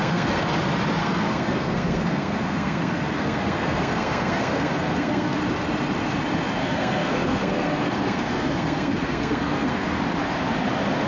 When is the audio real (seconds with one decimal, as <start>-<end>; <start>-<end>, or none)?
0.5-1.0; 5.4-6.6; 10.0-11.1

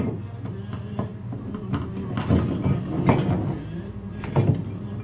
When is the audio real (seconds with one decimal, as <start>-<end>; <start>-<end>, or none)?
0.0-5.0

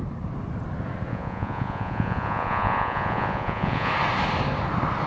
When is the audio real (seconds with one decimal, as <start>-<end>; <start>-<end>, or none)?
0.0-1.1; 3.9-5.1

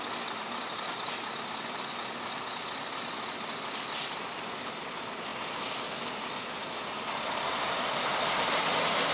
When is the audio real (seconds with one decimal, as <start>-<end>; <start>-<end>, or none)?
0.0-9.1

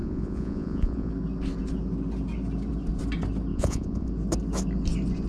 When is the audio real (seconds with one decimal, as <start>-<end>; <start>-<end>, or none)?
1.1-3.5; 4.1-5.3

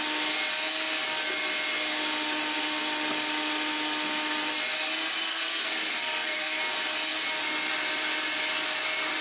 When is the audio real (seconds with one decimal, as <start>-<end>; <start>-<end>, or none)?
0.0-5.3; 6.6-9.2

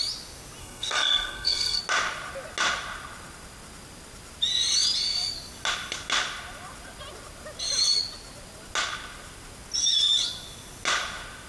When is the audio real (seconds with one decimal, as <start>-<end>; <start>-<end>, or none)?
0.0-0.6; 1.8-11.5